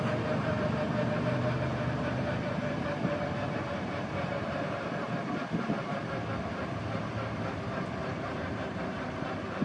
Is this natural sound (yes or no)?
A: no